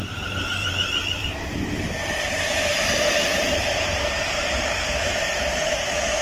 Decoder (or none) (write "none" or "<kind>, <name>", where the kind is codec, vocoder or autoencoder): vocoder, BigVGAN v2